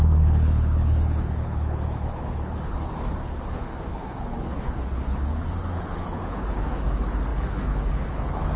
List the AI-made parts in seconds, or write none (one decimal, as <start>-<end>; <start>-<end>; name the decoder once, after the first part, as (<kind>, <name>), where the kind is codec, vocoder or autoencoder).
0.0-8.6 (codec, HILCodec)